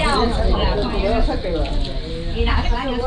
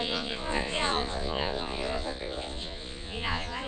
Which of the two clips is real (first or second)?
first